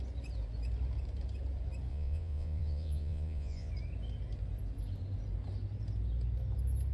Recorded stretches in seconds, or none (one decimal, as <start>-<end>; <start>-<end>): 0.0-1.9; 3.7-6.9